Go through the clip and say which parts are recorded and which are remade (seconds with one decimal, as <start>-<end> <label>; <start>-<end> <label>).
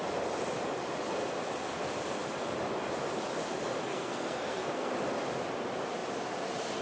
0.0-3.9 recorded; 3.9-4.9 remade; 4.9-6.8 recorded